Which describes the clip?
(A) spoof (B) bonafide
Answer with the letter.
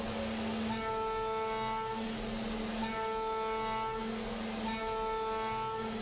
B